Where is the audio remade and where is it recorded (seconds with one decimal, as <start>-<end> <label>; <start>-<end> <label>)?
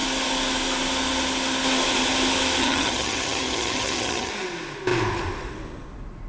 0.0-2.6 recorded; 2.6-4.3 remade; 4.3-6.3 recorded